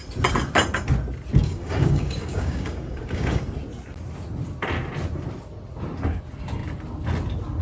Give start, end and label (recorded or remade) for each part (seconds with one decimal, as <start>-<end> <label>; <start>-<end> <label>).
0.0-1.4 recorded; 1.4-3.4 remade; 3.4-7.6 recorded